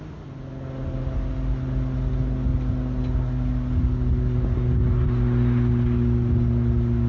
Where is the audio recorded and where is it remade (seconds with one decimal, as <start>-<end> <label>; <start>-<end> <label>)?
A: 0.0-7.1 recorded